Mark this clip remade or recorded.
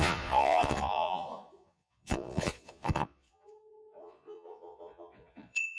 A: remade